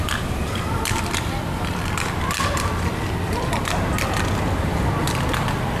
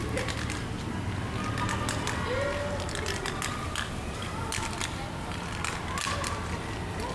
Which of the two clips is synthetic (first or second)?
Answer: first